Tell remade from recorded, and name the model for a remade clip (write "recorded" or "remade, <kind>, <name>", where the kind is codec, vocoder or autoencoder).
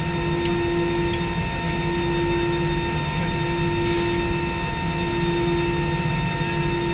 recorded